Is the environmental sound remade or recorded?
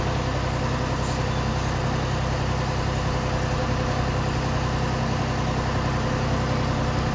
recorded